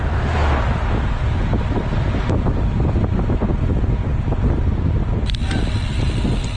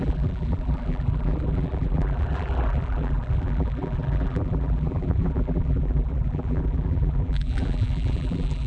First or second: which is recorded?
first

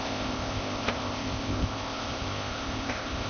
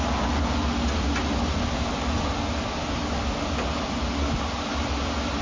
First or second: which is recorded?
second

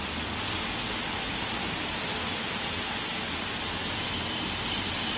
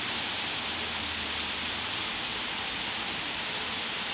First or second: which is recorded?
first